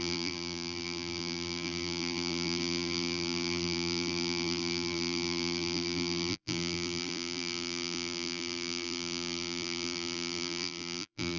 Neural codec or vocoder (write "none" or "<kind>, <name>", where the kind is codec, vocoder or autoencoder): vocoder, BigVGAN v2